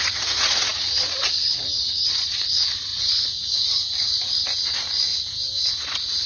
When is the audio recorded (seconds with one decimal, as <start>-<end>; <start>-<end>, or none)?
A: 2.9-3.5; 5.1-5.7